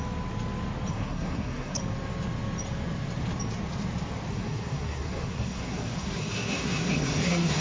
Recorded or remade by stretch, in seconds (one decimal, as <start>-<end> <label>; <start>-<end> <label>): 0.0-0.9 recorded; 0.9-1.8 remade; 1.8-4.3 recorded; 4.3-7.6 remade